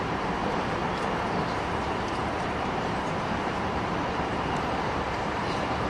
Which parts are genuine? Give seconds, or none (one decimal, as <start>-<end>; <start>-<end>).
0.8-1.4